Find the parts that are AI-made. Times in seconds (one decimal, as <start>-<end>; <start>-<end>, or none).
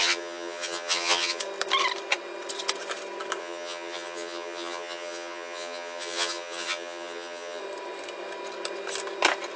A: 0.0-1.4; 3.4-7.6